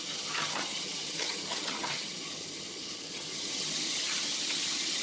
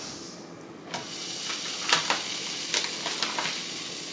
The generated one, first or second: first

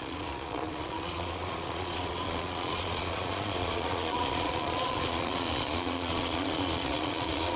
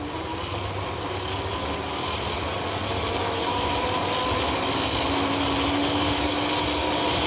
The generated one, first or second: first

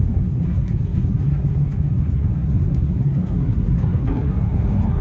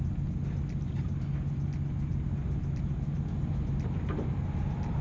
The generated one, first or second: first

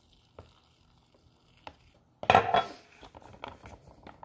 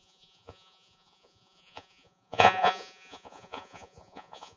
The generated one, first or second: second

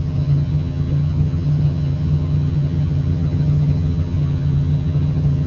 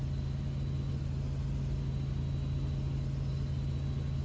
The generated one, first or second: first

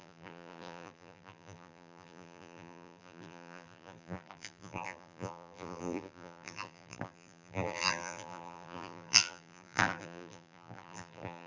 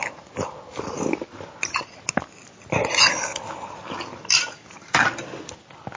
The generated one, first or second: first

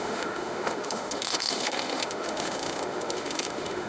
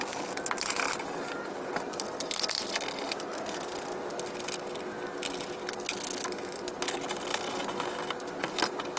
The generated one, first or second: first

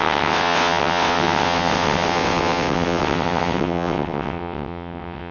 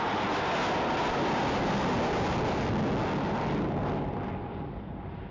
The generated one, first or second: first